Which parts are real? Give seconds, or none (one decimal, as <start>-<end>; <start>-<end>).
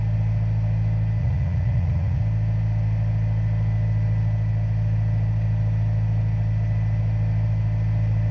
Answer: 0.0-1.2; 2.2-8.3